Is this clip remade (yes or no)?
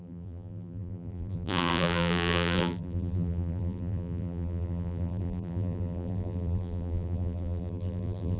yes